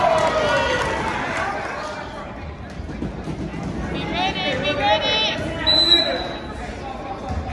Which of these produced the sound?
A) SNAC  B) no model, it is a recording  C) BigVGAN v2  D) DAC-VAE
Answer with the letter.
B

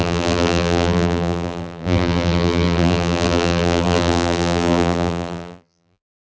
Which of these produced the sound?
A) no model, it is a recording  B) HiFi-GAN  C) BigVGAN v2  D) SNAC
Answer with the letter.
C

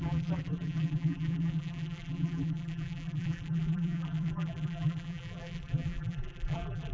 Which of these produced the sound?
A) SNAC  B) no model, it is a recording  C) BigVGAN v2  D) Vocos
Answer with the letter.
C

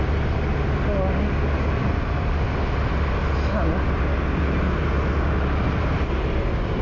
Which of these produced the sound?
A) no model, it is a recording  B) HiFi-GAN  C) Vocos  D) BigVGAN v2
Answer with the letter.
A